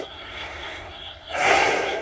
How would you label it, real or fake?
fake